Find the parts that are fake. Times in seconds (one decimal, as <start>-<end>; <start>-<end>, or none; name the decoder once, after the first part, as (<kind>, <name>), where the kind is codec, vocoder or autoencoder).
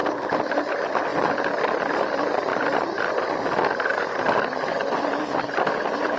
0.0-0.6 (vocoder, BigVGAN v2)